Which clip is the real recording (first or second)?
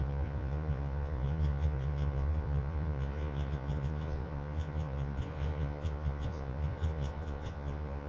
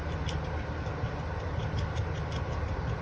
second